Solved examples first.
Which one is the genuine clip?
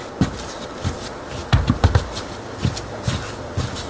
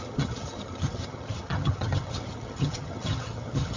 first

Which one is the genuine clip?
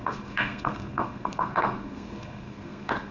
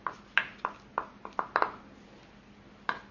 second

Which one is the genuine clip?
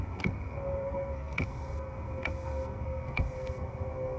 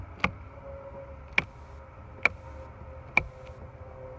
second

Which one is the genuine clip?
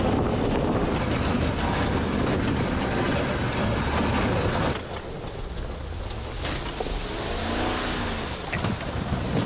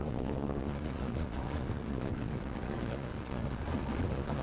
first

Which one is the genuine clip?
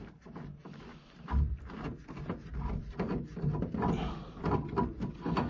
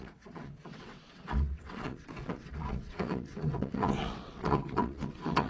first